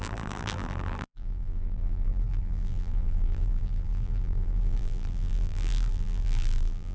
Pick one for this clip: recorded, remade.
remade